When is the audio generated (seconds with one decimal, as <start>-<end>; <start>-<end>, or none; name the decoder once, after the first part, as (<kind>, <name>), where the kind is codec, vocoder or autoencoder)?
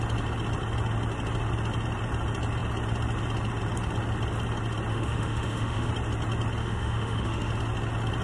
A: 4.9-5.9 (autoencoder, DAC-VAE); 6.6-7.5